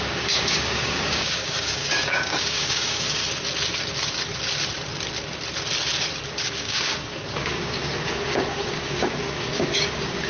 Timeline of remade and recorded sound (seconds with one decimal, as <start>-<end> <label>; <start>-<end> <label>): 0.0-3.2 remade; 3.2-6.3 recorded; 6.3-10.3 remade